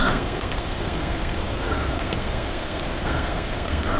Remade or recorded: remade